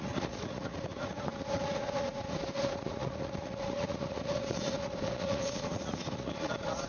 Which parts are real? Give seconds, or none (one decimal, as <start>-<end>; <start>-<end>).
none